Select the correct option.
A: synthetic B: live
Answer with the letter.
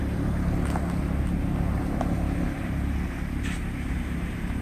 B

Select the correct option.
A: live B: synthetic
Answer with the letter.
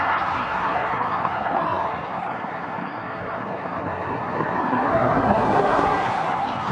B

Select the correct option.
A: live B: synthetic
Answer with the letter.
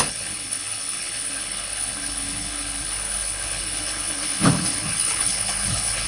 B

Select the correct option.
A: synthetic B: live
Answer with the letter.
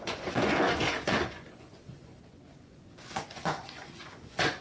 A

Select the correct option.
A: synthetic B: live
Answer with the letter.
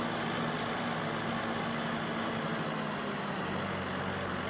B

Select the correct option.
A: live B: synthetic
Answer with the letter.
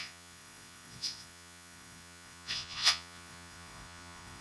B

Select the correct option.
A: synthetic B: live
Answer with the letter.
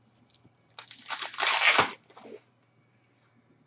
B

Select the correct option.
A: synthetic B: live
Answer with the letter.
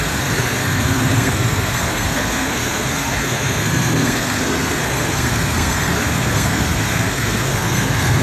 A